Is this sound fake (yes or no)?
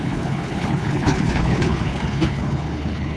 yes